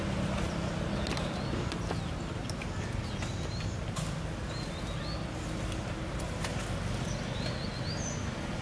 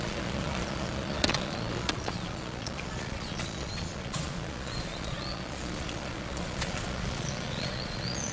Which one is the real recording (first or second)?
first